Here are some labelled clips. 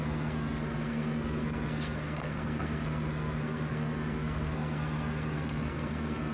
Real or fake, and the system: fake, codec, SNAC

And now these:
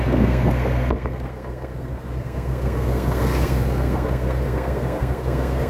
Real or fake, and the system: fake, codec, SNAC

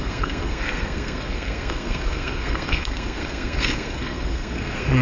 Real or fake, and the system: fake, codec, SNAC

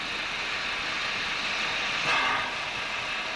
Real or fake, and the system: real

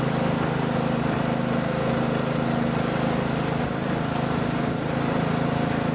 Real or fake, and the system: real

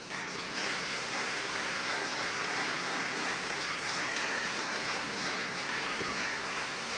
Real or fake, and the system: fake, codec, SNAC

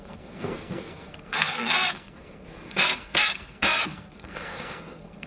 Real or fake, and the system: fake, codec, SNAC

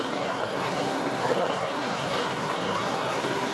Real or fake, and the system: fake, codec, SNAC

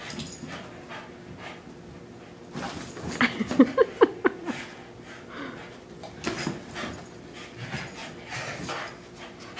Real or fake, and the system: real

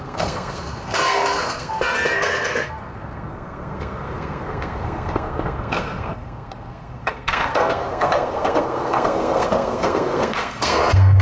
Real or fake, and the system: fake, codec, SNAC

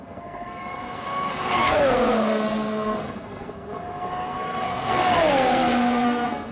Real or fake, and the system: fake, codec, SNAC